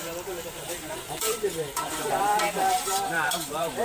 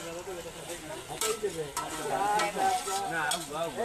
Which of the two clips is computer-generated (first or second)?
first